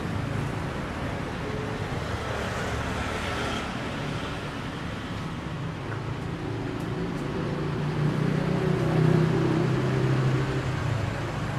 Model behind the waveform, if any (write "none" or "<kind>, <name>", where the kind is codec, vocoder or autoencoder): none